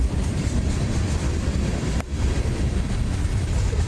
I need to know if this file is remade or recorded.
remade